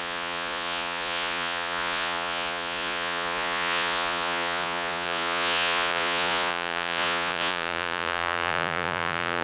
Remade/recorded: remade